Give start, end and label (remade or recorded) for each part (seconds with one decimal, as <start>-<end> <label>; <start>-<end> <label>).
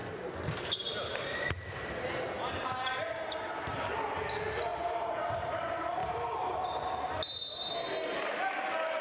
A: 0.0-1.8 remade; 1.8-2.6 recorded; 2.6-3.9 remade; 3.9-4.7 recorded; 4.7-5.6 remade; 5.6-6.0 recorded; 6.0-6.6 remade; 6.6-9.0 recorded